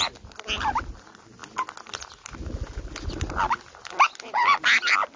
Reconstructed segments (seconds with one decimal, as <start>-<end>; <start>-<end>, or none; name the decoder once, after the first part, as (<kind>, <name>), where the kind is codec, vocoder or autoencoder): none

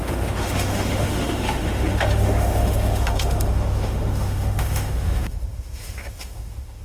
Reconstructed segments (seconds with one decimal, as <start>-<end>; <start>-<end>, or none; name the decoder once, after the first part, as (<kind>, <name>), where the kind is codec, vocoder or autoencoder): 0.0-6.8 (autoencoder, DAC-VAE)